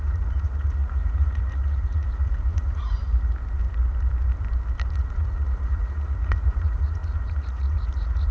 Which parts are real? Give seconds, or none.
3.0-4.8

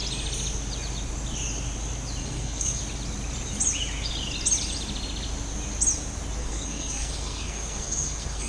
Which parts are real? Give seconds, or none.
0.0-2.2; 2.8-6.4